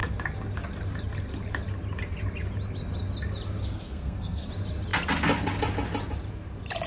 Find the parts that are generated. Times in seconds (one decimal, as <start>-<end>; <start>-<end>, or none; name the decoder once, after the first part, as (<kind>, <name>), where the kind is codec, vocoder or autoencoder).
3.6-4.5 (codec, SNAC)